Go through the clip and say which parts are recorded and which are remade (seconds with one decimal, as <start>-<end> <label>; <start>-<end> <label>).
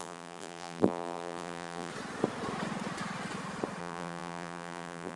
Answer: 0.0-1.9 remade; 1.9-3.8 recorded; 3.8-5.2 remade